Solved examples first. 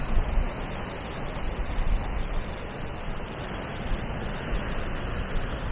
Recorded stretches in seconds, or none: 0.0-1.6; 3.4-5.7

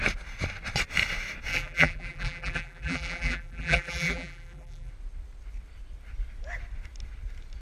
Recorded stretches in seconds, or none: 0.0-1.5; 4.9-7.6

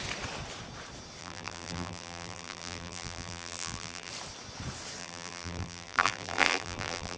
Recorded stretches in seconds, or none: 0.0-1.2; 4.1-5.0